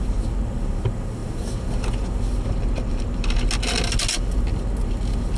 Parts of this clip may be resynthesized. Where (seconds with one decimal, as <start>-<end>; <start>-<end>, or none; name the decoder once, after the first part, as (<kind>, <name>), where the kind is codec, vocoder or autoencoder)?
none

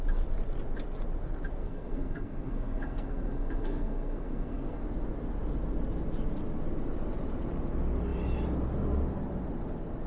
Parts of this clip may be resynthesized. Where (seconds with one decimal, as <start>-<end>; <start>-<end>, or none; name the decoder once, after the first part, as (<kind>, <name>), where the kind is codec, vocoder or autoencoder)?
1.6-4.8 (codec, SNAC)

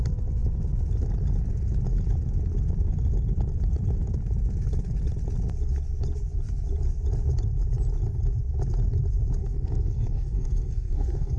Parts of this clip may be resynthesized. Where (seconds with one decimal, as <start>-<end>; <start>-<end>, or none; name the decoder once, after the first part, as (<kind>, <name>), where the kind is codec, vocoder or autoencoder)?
9.4-11.4 (codec, SNAC)

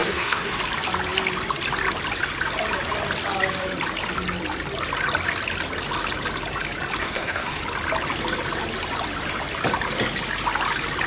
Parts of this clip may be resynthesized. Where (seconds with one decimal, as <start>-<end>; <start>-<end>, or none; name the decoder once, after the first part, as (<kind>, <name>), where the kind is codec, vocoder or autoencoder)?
0.0-0.6 (codec, SNAC); 7.0-7.6

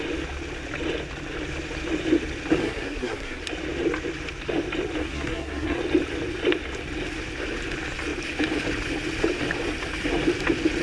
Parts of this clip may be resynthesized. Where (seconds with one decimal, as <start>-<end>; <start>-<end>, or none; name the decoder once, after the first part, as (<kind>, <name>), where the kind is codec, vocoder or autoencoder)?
2.6-3.4 (codec, SNAC); 5.0-5.8

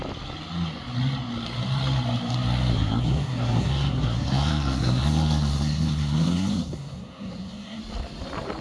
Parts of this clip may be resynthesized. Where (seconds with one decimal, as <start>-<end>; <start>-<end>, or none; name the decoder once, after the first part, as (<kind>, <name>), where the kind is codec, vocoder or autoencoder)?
2.7-7.8 (codec, SNAC)

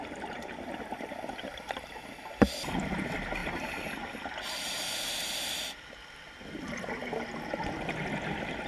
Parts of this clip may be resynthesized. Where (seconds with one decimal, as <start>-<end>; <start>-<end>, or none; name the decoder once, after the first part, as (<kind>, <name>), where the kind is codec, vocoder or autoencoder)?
none

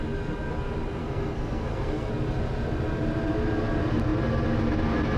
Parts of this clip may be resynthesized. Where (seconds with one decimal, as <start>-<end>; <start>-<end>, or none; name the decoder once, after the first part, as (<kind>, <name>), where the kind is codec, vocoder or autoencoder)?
1.0-2.1 (codec, SNAC)